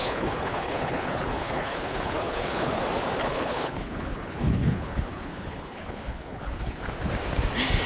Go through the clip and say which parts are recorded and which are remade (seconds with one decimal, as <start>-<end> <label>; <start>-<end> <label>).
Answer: 0.0-2.8 remade; 2.8-3.2 recorded; 3.2-6.8 remade; 6.8-7.9 recorded